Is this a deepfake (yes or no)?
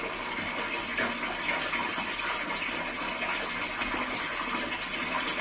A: no